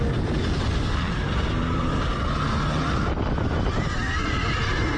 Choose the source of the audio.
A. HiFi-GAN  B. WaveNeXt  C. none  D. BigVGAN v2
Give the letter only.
C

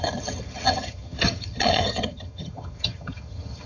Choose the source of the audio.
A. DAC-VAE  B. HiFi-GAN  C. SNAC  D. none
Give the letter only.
B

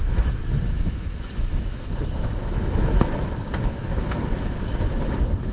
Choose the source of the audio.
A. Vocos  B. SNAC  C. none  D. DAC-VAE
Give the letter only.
D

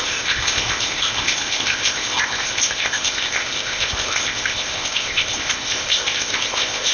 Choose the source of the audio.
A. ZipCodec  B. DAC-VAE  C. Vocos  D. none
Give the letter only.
A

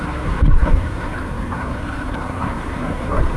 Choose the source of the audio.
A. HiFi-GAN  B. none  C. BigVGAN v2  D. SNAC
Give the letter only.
D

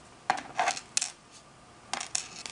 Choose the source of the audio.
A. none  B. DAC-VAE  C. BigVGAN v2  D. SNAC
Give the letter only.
A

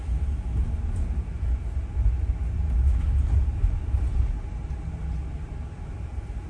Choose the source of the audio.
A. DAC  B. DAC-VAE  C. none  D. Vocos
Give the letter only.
C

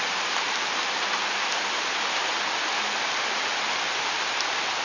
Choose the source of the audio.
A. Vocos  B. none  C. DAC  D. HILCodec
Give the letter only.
B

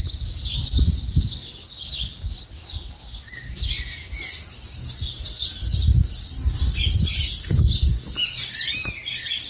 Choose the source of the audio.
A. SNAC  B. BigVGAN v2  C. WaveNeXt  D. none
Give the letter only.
D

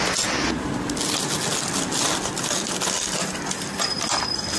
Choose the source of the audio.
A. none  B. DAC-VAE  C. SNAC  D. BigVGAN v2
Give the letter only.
A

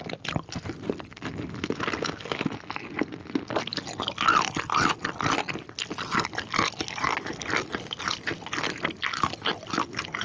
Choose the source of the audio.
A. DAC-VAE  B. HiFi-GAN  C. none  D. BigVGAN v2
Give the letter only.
C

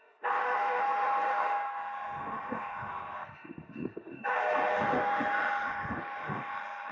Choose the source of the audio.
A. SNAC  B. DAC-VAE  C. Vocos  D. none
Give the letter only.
B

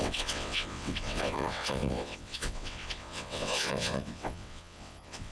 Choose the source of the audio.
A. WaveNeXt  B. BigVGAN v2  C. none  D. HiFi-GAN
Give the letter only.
A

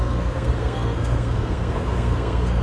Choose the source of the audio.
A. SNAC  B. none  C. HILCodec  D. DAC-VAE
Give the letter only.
A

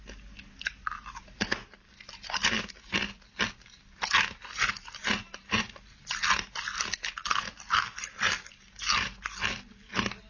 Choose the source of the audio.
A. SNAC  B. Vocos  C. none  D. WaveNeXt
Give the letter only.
C